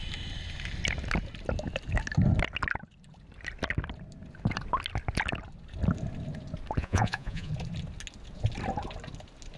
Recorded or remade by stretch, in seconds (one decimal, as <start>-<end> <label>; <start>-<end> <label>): 0.0-6.8 recorded; 6.8-7.5 remade; 7.5-9.6 recorded